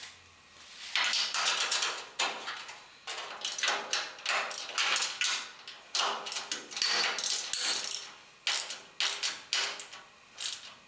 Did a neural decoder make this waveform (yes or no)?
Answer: no